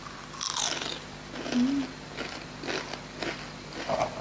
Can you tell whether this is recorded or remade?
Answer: recorded